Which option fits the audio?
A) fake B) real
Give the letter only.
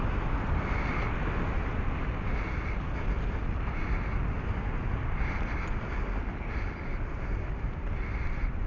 B